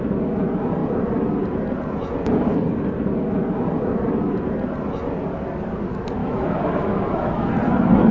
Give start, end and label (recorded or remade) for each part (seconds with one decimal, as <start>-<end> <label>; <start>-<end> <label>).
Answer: 0.0-6.2 recorded; 6.2-7.5 remade; 7.5-8.1 recorded